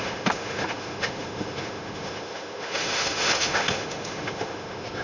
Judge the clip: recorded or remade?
remade